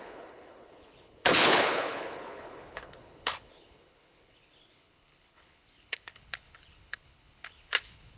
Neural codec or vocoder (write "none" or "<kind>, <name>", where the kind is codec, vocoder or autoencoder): codec, HILCodec